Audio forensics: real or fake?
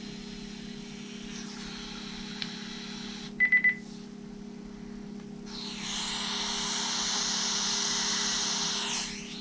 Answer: real